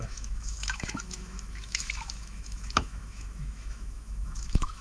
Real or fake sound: fake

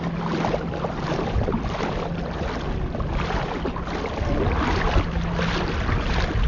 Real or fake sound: real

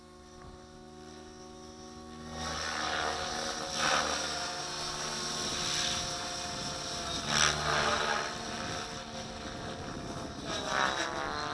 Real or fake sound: real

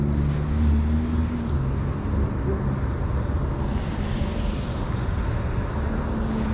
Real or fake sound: real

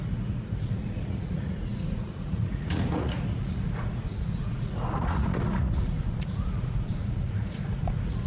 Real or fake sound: fake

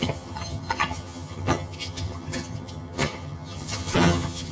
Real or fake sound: fake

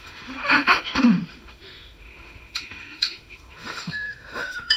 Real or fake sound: fake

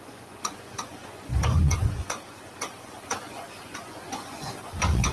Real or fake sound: fake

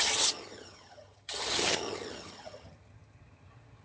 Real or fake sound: fake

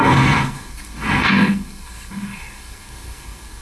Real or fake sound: fake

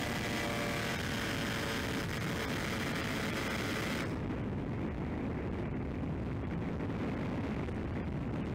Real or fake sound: real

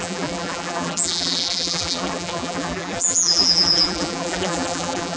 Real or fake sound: fake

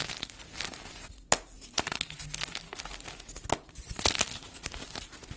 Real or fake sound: real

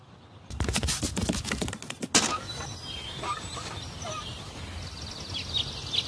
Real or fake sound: real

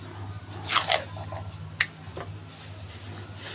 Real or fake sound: real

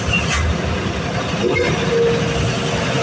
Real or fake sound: real